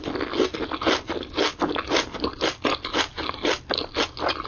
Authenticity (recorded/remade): recorded